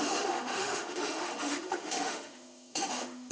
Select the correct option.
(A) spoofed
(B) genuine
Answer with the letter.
A